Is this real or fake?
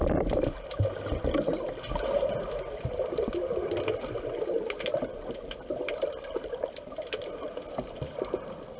real